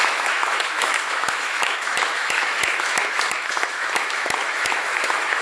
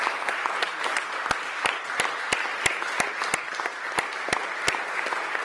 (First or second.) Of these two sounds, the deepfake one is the first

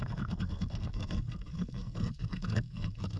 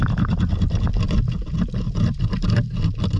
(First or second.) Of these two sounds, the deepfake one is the first